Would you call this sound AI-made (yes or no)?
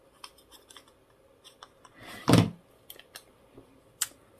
no